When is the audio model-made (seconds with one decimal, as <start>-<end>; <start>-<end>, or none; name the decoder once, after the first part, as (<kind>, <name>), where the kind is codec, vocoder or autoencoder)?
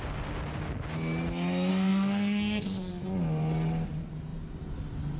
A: 1.7-2.9 (codec, SNAC)